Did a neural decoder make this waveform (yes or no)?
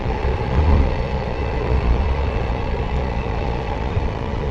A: yes